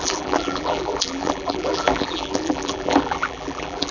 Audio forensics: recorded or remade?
remade